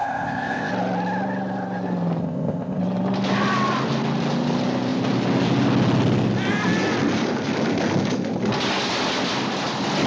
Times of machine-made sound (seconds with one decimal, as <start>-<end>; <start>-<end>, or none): 0.0-0.7; 2.2-2.8